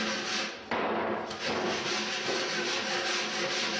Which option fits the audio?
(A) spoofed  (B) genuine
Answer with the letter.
B